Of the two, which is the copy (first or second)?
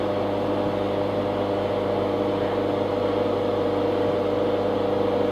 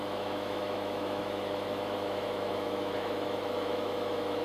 second